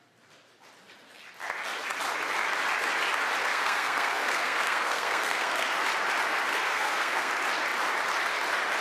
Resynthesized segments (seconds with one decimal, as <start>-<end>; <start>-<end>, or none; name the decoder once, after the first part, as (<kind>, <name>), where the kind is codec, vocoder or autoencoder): 3.4-5.7 (codec, SNAC); 6.5-7.3